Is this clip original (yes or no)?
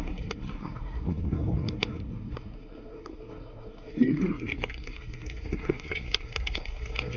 no